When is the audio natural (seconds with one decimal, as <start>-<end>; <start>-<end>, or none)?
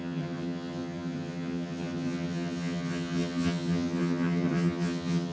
none